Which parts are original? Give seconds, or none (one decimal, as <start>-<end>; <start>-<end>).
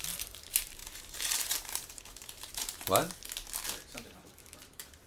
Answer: 3.0-4.0